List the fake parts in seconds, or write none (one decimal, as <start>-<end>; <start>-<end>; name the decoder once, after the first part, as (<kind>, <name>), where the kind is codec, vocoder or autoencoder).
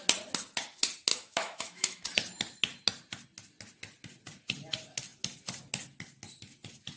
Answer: 1.1-2.0 (autoencoder, DAC-VAE)